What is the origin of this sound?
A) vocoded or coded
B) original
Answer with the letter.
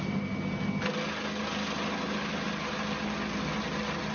B